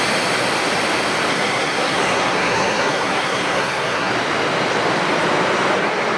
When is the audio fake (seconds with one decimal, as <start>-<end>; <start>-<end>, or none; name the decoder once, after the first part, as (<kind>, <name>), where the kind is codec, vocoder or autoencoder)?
1.3-4.1 (codec, SNAC)